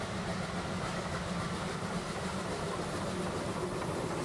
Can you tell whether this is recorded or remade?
recorded